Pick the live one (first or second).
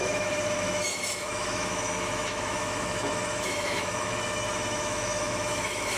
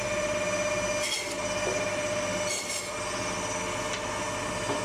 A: second